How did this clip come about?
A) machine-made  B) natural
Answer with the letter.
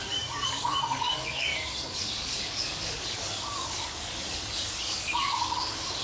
A